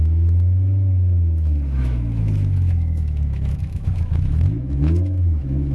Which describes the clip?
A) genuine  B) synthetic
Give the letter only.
B